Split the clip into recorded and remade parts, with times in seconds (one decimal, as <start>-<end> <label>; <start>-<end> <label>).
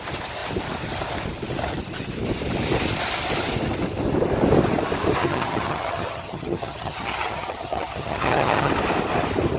0.0-5.2 recorded; 5.2-8.7 remade; 8.7-9.6 recorded